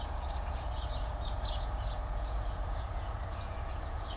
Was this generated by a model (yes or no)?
yes